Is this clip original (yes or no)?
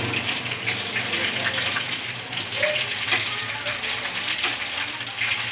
yes